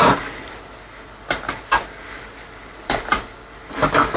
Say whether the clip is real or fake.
real